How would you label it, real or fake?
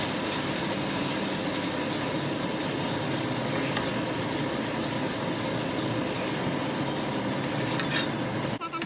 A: real